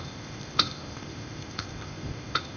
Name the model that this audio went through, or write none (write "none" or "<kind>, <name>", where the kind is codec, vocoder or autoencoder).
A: codec, ZipCodec